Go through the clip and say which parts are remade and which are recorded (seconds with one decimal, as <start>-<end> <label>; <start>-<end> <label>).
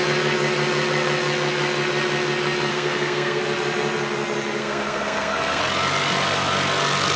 0.0-2.7 recorded; 2.7-3.4 remade; 3.4-4.6 recorded; 4.6-5.6 remade; 5.6-7.2 recorded